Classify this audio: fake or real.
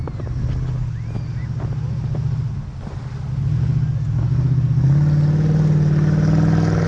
real